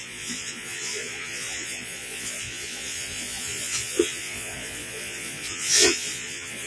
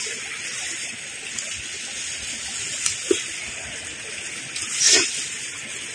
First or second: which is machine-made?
first